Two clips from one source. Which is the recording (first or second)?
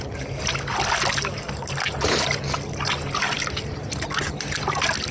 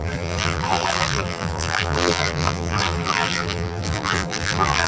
first